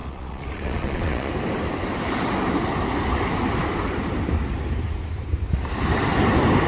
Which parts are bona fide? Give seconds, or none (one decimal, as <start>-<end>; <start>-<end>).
1.3-6.7